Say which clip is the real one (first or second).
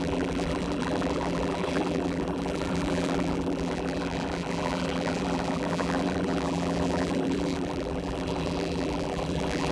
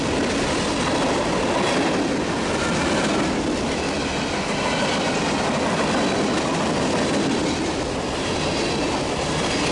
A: second